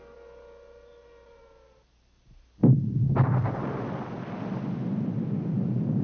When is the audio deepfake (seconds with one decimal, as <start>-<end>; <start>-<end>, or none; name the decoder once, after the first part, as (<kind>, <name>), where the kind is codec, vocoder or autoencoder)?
none